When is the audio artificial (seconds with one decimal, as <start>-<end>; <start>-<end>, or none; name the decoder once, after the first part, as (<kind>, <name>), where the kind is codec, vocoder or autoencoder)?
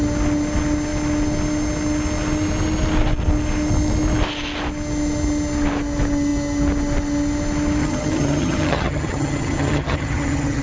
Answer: 7.8-10.6 (vocoder, HiFi-GAN)